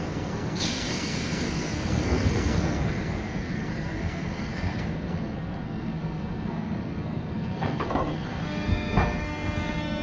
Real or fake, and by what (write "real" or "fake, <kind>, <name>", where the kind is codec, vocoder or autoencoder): fake, codec, SNAC